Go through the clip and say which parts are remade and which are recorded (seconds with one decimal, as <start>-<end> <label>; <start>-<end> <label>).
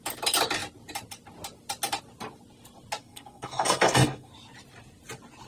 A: 0.0-3.0 recorded; 3.0-4.3 remade; 4.3-5.5 recorded